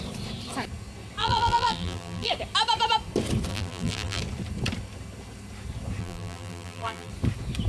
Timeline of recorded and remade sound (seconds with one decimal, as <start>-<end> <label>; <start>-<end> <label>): 0.0-1.2 recorded; 1.2-2.3 remade; 2.3-3.5 recorded; 3.5-4.2 remade; 4.2-6.0 recorded; 6.0-7.1 remade; 7.1-7.7 recorded